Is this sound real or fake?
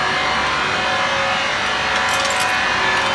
real